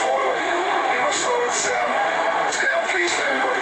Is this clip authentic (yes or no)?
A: no